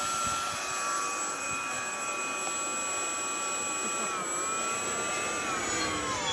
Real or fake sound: real